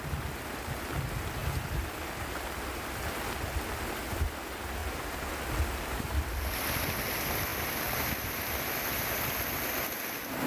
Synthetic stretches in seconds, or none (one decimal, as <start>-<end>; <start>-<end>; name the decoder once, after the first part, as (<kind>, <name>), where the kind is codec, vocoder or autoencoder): 1.4-2.0 (vocoder, BigVGAN v2)